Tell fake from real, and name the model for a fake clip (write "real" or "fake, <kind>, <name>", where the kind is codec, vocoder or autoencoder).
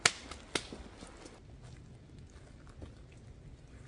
real